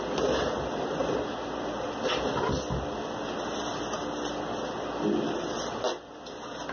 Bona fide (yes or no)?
yes